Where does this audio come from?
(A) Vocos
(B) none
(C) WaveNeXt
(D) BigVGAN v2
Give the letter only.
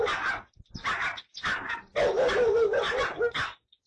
B